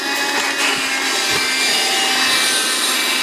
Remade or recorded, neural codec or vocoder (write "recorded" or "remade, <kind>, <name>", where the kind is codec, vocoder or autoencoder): recorded